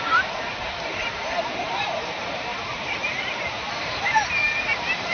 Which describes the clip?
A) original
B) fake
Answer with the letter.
B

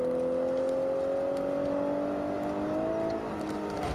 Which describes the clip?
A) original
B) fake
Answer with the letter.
A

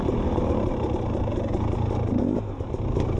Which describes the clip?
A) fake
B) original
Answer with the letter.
A